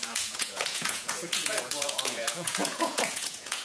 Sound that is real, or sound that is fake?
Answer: fake